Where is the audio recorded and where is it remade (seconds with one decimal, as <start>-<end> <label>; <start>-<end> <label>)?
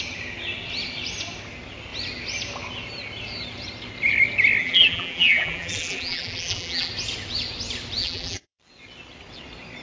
0.0-4.6 recorded; 4.6-6.9 remade; 6.9-8.0 recorded; 8.0-8.6 remade; 8.6-9.8 recorded